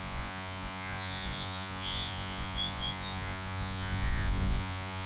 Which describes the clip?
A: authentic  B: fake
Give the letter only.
B